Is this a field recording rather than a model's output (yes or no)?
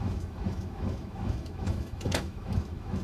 no